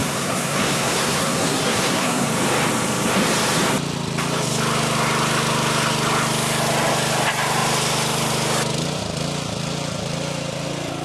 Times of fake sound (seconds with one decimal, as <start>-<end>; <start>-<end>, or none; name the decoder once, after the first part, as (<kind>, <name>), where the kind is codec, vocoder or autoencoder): 0.0-2.3 (codec, SNAC)